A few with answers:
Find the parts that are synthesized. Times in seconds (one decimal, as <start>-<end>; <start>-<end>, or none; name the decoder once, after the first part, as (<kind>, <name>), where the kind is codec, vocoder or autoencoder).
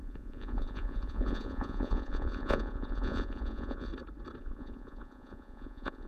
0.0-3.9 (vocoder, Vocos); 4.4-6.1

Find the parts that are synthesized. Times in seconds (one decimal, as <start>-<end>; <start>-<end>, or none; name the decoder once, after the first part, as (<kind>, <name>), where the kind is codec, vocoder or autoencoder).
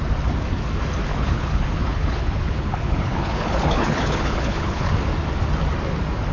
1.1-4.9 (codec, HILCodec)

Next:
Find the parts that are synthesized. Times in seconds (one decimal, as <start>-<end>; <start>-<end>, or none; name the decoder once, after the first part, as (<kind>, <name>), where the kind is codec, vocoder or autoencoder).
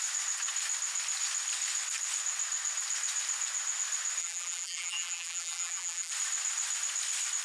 4.2-6.1 (vocoder, BigVGAN v2)